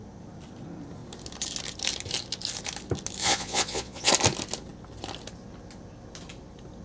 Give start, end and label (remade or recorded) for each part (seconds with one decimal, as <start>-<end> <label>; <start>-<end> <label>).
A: 0.0-3.2 recorded; 3.2-4.1 remade; 4.1-6.8 recorded